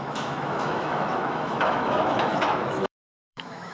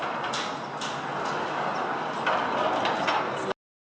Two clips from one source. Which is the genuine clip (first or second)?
second